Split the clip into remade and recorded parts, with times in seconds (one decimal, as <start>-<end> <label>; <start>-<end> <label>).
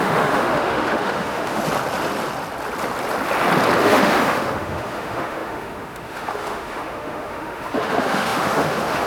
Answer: 0.0-1.6 remade; 1.6-3.8 recorded; 3.8-9.1 remade